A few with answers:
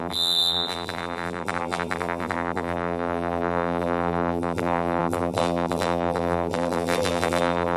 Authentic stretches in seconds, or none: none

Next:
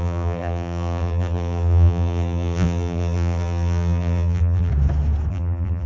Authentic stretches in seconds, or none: 4.7-5.3

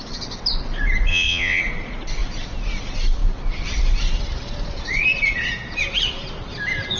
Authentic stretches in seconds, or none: 0.0-1.1; 1.6-7.0

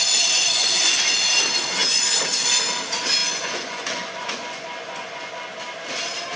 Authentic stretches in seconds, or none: 0.0-0.4; 1.1-3.2; 5.3-6.4